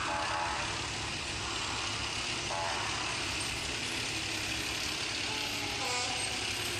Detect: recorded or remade recorded